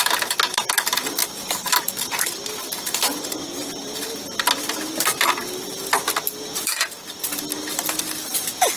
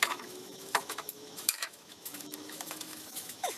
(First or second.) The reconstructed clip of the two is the second